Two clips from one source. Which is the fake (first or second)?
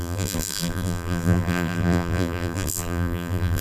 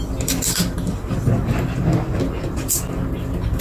first